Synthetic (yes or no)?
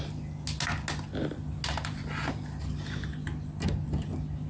no